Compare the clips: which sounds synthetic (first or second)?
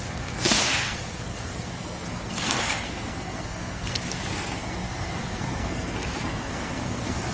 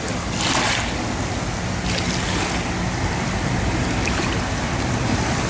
first